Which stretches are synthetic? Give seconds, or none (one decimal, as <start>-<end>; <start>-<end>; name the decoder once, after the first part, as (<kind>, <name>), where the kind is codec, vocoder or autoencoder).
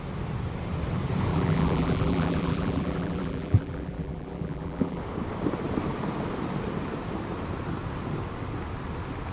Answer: 1.3-5.0 (vocoder, BigVGAN v2)